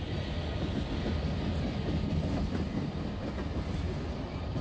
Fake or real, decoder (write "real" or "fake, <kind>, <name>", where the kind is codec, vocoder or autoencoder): real